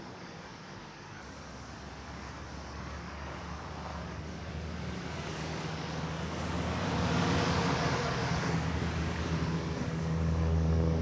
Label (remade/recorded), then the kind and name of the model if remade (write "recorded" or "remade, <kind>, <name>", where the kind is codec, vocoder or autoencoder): remade, codec, DAC